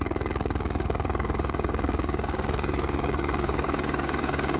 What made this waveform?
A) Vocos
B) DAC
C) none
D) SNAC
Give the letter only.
B